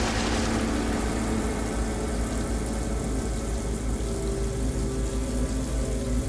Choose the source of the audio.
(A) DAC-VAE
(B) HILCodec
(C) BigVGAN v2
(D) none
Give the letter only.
D